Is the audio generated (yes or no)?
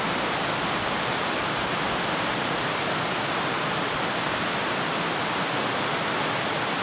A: no